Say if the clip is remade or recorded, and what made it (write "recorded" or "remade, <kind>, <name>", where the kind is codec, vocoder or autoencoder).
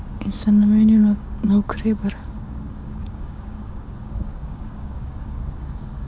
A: remade, codec, DAC